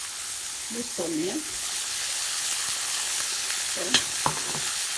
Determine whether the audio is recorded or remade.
remade